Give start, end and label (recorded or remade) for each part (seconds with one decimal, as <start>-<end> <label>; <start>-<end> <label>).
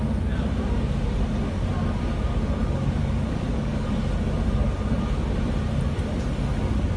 0.0-3.0 recorded; 3.0-3.9 remade; 3.9-7.0 recorded